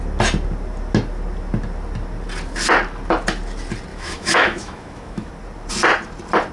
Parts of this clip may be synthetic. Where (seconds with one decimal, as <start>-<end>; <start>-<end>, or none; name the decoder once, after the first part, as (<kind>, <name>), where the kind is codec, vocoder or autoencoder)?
3.9-5.3 (autoencoder, DAC-VAE)